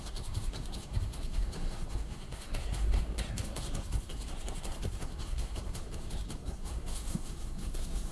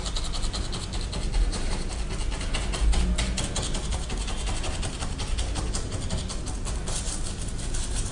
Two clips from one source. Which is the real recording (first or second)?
second